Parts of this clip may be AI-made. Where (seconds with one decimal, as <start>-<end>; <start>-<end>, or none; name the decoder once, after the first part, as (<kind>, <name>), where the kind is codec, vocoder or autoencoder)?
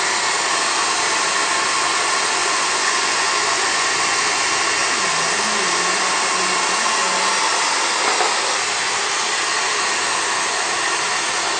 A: 2.4-4.4 (vocoder, Vocos)